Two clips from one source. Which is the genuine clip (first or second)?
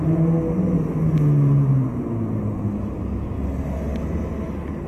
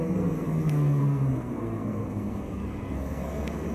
first